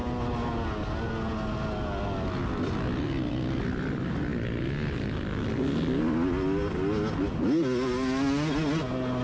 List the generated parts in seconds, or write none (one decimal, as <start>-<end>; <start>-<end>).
none